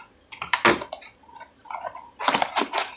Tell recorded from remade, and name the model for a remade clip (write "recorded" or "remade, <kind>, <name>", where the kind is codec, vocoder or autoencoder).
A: recorded